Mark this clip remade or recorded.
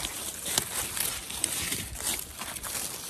recorded